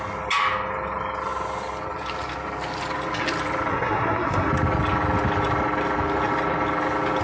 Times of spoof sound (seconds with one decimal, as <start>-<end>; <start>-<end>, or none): 3.7-4.5